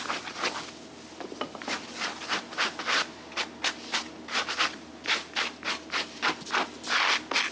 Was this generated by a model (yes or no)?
no